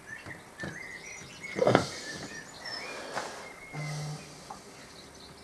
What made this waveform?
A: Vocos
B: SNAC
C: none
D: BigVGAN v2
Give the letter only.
C